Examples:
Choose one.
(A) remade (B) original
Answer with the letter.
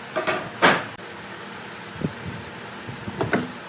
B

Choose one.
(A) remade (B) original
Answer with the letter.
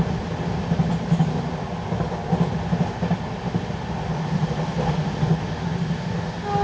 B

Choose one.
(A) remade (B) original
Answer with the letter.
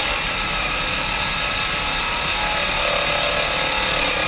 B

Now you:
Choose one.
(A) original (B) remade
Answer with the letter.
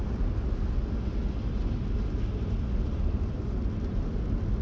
A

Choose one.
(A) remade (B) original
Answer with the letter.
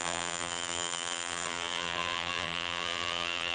A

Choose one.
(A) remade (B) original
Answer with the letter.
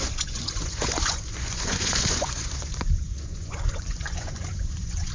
A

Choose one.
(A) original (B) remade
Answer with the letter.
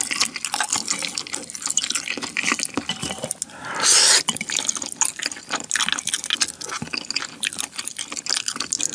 A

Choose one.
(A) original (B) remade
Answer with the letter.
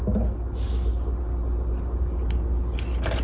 A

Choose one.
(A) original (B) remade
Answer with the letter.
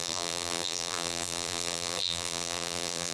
B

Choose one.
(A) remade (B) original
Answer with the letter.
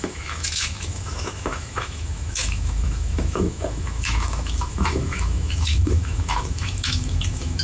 A